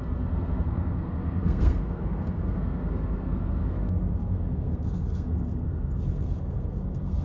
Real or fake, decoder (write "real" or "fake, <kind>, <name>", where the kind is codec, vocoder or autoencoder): fake, codec, SNAC